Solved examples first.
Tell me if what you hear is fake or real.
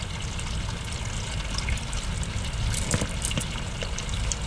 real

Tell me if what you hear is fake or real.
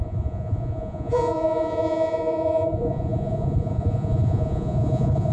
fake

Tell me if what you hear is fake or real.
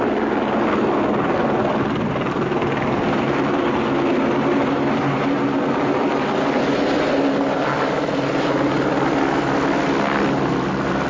real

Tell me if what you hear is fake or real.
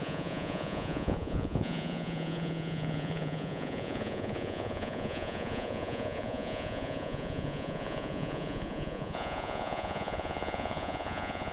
fake